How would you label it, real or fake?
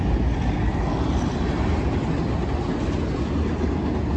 real